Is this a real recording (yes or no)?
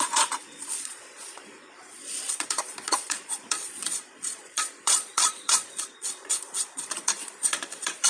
no